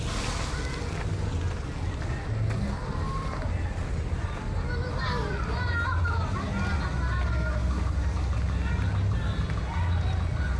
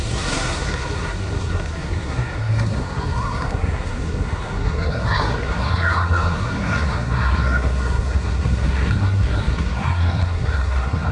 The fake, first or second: second